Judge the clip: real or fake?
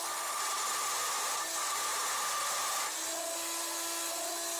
real